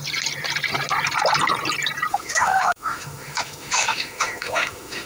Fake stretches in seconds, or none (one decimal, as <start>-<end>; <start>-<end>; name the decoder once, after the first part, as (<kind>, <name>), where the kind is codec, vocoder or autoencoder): 2.1-5.1 (autoencoder, DAC-VAE)